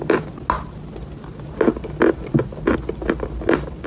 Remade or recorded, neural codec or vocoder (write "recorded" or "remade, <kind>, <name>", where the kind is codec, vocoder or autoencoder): recorded